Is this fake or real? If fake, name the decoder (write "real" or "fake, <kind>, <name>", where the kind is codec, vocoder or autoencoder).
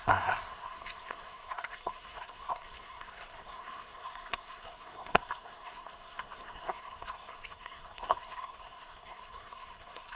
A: fake, codec, SNAC